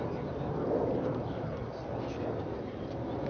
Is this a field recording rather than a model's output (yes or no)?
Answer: no